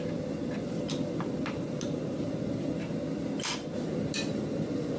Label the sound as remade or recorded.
recorded